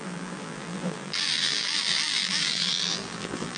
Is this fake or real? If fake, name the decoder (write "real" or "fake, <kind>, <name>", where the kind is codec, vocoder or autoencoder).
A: fake, vocoder, BigVGAN v2